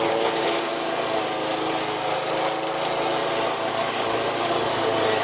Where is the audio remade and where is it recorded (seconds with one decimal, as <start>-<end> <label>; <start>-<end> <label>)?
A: 0.0-0.7 remade; 0.7-3.7 recorded; 3.7-5.2 remade